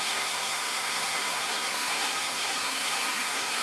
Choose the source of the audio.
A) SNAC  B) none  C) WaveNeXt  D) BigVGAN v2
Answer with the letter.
A